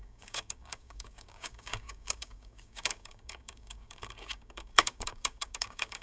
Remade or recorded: remade